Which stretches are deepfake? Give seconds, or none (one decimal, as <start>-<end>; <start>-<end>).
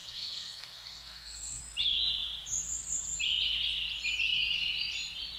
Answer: 0.0-1.6